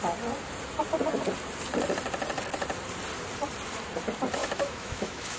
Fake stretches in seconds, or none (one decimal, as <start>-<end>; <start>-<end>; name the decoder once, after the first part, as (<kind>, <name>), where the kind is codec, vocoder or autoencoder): 4.4-5.4 (autoencoder, DAC-VAE)